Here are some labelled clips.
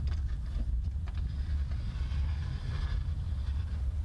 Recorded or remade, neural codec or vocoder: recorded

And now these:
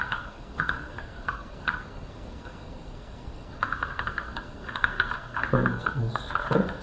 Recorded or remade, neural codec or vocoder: remade, codec, SNAC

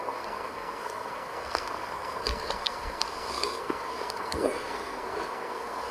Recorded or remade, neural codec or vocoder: remade, codec, SNAC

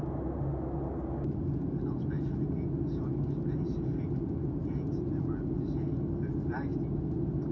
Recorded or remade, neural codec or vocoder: recorded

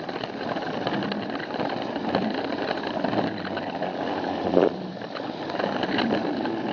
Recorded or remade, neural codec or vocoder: recorded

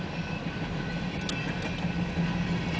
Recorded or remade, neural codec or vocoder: recorded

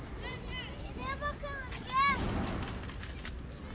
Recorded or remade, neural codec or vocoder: recorded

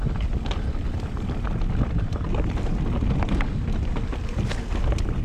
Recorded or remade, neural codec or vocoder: recorded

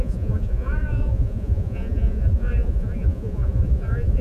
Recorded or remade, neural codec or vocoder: remade, vocoder, Vocos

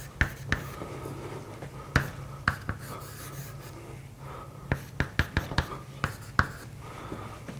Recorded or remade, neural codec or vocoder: recorded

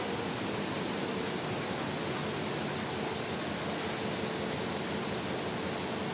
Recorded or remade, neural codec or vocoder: recorded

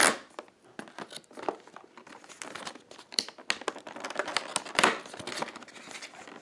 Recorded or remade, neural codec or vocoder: recorded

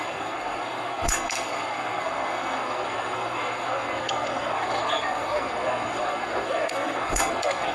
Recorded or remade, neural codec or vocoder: remade, codec, SNAC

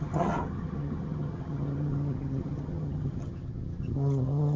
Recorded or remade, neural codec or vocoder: remade, vocoder, HiFi-GAN